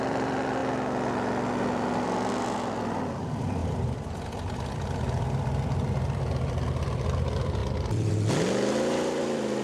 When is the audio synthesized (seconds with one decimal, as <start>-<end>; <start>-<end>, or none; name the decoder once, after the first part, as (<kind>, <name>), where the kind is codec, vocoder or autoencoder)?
0.0-0.6 (vocoder, BigVGAN v2); 2.3-9.6